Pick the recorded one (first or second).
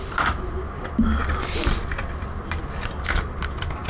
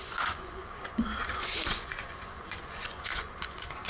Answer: first